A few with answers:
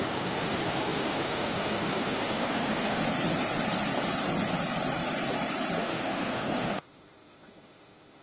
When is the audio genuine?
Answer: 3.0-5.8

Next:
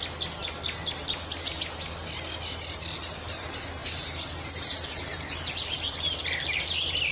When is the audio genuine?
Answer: 0.0-7.1

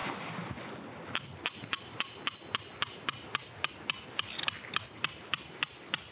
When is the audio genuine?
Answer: 0.0-6.1

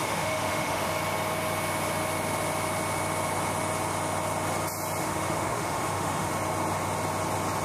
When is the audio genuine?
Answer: 0.9-5.0; 6.3-7.6

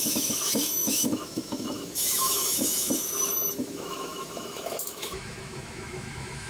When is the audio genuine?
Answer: none

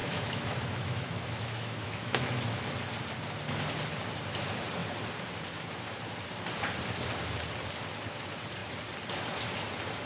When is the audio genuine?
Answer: 2.6-10.1

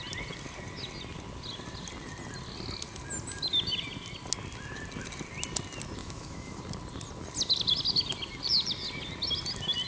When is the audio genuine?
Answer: 0.0-6.0; 6.6-9.9

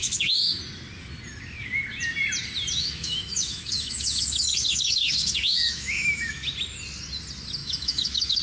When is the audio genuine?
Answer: 0.6-2.8; 6.5-7.6